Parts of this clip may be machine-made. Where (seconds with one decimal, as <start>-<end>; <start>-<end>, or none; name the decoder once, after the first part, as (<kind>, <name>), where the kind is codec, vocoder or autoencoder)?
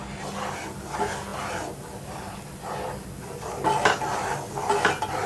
none